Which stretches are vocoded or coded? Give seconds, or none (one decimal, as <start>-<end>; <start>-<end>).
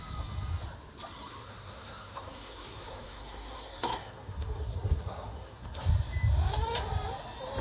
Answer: 1.3-5.9